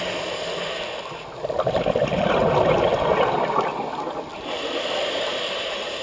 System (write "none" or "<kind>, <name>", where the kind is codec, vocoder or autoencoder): none